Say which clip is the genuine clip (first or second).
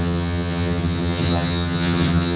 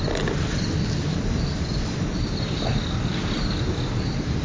second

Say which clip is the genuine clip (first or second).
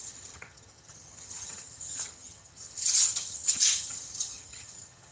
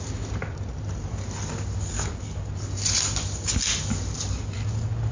second